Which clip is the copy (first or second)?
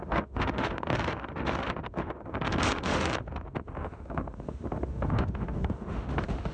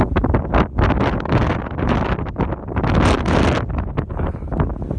first